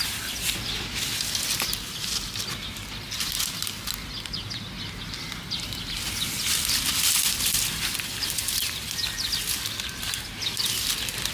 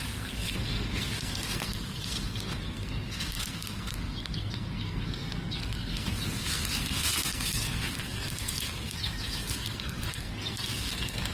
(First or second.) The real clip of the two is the first